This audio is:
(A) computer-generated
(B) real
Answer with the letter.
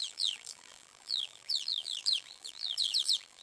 A